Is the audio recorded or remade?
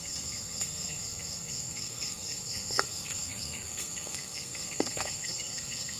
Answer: remade